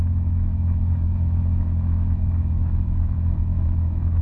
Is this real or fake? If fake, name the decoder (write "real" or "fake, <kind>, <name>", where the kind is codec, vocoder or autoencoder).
fake, autoencoder, DAC-VAE